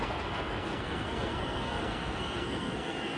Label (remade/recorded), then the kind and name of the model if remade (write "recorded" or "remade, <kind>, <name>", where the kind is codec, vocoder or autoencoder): remade, codec, SNAC